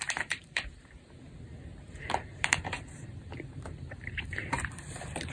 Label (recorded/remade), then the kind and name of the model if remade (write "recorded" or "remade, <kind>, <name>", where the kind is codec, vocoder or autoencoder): remade, vocoder, BigVGAN v2